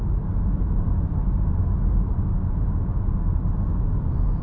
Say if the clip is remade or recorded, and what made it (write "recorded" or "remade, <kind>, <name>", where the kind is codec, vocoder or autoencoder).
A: recorded